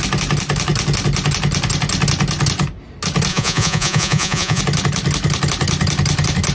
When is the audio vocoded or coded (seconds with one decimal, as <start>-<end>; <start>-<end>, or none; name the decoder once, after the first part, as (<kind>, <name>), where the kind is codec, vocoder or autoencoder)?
3.3-4.6 (vocoder, Vocos)